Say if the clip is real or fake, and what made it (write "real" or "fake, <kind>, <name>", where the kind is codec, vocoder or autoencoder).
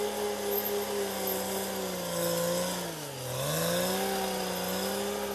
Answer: real